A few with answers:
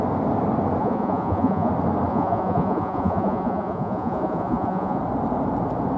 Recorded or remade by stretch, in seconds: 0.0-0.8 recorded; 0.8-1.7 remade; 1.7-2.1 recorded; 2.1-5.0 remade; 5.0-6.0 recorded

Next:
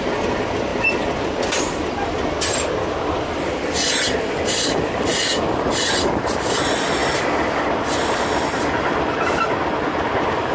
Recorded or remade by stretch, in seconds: 0.0-10.5 recorded

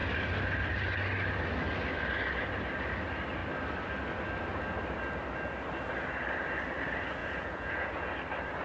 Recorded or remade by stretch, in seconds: 0.0-7.2 recorded; 7.2-8.1 remade; 8.1-8.6 recorded

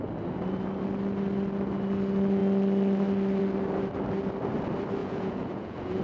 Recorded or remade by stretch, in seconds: 0.0-5.0 recorded; 5.0-6.0 remade

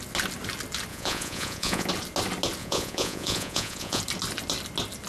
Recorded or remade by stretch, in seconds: 0.0-0.9 recorded; 0.9-1.9 remade; 1.9-2.6 recorded; 2.6-4.0 remade; 4.0-5.1 recorded

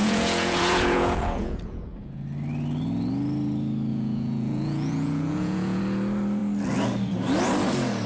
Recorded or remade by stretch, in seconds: 0.0-2.2 remade; 2.2-3.9 recorded; 3.9-5.8 remade; 5.8-8.1 recorded

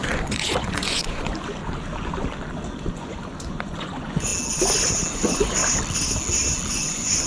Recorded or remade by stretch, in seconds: 0.0-1.6 remade; 1.6-2.9 recorded; 2.9-4.3 remade; 4.3-5.1 recorded; 5.1-5.6 remade; 5.6-6.7 recorded; 6.7-7.3 remade